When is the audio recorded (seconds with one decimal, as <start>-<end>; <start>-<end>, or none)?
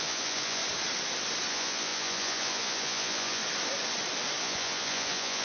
0.6-1.5; 3.4-4.4